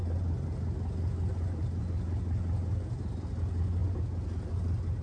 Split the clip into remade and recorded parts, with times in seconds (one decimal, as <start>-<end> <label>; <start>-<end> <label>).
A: 0.0-5.0 recorded